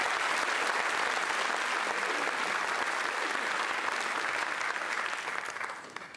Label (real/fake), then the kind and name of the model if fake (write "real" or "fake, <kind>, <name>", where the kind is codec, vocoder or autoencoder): real